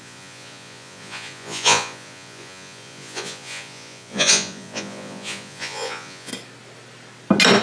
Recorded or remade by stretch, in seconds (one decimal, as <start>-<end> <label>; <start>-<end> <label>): 0.0-6.3 remade; 6.3-7.6 recorded